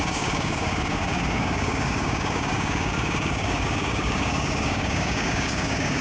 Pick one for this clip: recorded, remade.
remade